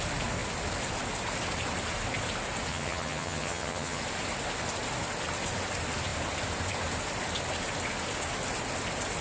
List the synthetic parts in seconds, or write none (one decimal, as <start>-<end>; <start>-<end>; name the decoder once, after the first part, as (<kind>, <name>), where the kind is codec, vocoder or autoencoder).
2.7-4.0 (vocoder, HiFi-GAN)